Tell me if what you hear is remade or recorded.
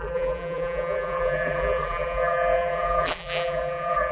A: remade